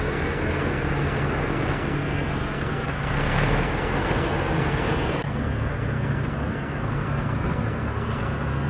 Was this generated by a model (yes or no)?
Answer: yes